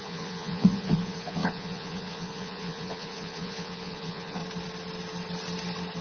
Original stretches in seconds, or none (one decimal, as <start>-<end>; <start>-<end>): 4.4-6.0